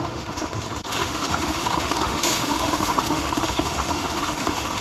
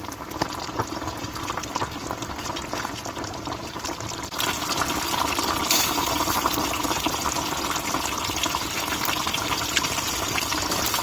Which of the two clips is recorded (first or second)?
second